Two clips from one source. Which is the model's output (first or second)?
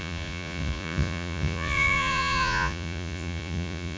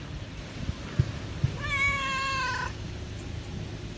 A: first